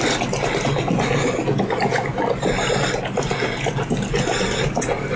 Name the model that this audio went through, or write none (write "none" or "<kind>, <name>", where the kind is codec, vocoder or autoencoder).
none